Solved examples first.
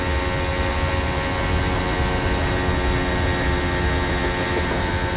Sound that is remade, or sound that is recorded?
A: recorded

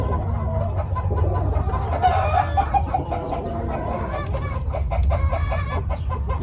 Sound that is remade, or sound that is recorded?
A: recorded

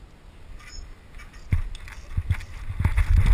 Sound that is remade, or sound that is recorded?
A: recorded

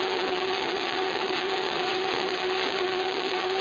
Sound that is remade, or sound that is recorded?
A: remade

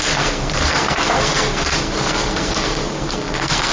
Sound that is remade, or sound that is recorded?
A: remade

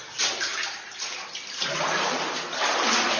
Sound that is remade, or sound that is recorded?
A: recorded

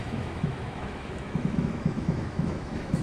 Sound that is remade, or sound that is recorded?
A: remade